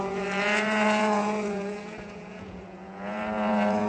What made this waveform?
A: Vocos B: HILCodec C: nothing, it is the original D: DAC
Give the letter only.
A